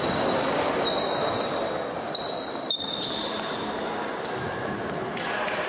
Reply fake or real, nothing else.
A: real